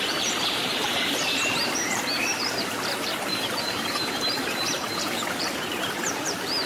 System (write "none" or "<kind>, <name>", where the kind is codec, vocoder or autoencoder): vocoder, BigVGAN v2